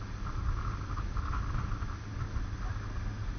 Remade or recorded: recorded